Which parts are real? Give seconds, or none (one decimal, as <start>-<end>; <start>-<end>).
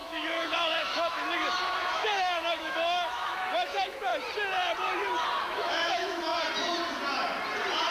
4.1-5.4; 6.3-7.9